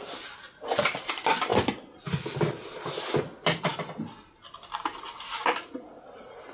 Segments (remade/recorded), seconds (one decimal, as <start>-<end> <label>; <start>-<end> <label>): 0.0-6.5 recorded